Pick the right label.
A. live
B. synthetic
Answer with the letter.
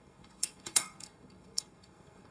B